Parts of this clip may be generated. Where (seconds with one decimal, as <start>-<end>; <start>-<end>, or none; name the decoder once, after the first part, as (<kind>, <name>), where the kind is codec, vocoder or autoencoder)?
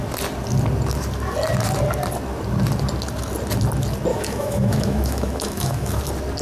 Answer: 4.1-6.0 (autoencoder, DAC-VAE)